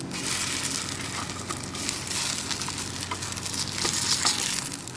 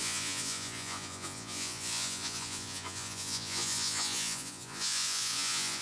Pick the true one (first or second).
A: first